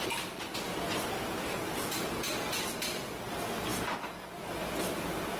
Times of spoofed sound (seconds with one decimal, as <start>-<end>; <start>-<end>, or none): none